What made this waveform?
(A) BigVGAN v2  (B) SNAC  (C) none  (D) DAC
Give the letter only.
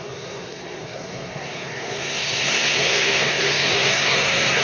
B